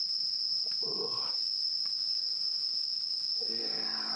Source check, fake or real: real